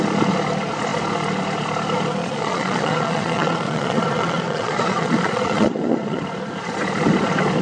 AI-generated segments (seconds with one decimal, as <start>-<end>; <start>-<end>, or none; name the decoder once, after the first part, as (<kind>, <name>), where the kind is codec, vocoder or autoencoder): 2.2-6.2 (vocoder, Vocos)